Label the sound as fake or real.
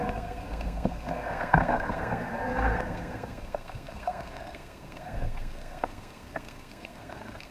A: fake